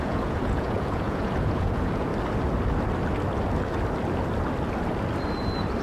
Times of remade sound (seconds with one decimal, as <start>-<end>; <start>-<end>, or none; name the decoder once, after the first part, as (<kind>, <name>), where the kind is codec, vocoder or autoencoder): 0.0-2.1 (vocoder, Vocos)